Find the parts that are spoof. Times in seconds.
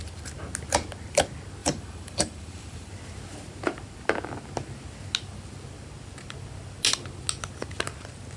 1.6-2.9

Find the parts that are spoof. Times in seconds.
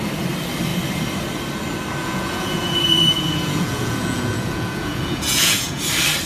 2.0-5.8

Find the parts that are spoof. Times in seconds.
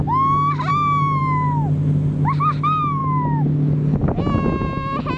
none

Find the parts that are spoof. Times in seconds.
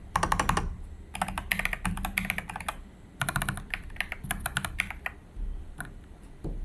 none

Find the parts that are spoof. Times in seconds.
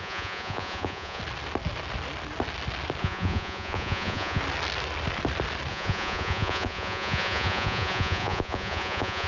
0.0-1.2; 3.0-4.4; 5.7-9.3